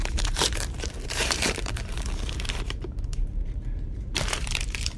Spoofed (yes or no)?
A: yes